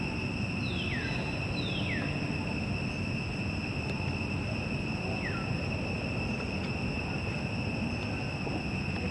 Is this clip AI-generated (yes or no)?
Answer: no